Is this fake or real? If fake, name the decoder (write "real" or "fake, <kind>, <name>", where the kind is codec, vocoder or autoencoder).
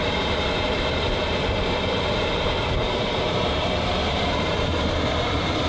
fake, vocoder, BigVGAN v2